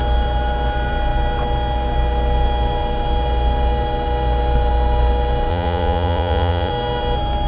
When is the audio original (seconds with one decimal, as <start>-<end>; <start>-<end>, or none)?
0.0-5.5; 6.7-7.5